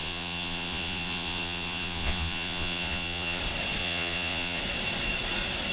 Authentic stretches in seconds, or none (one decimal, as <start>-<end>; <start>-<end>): 3.4-3.8; 4.6-5.7